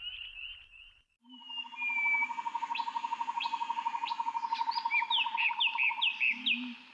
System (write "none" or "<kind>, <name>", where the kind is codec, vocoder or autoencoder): none